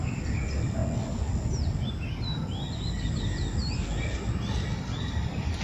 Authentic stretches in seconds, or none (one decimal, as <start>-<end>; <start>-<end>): 0.8-3.0; 3.6-4.3